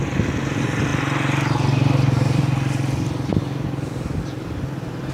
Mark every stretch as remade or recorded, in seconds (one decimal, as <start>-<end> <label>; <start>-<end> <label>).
0.0-5.1 recorded